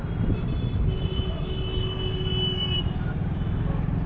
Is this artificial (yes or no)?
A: no